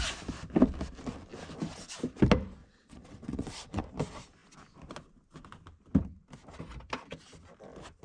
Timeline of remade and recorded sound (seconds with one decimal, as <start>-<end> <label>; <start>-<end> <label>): 0.0-2.6 recorded; 2.6-3.8 remade; 3.8-8.0 recorded